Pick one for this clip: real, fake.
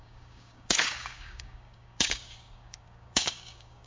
fake